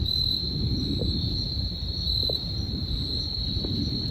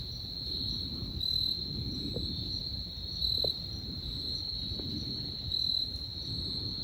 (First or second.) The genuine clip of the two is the second